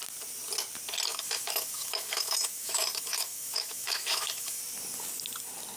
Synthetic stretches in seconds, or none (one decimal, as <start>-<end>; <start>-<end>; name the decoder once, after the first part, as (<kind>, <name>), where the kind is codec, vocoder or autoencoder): 1.1-4.6 (autoencoder, DAC-VAE)